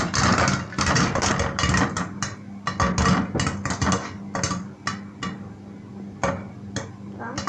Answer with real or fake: real